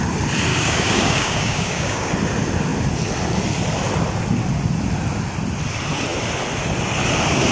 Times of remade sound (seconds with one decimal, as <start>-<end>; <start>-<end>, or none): 0.5-2.1